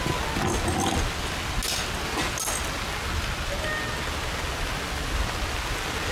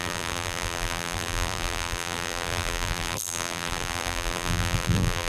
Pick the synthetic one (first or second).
second